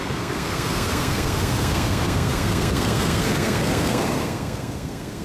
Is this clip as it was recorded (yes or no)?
no